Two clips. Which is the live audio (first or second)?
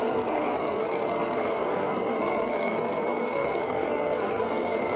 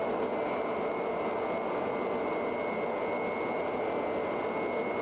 second